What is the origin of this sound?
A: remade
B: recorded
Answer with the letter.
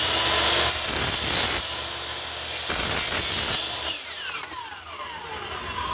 B